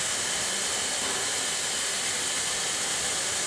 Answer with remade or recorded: recorded